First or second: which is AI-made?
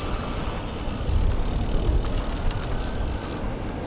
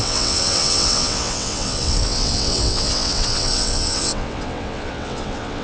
second